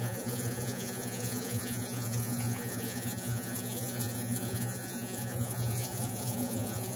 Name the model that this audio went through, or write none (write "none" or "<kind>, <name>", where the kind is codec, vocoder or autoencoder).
vocoder, Vocos